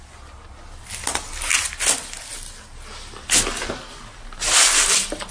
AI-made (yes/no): no